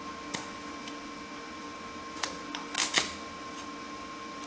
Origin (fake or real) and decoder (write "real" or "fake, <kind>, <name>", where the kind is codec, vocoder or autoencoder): real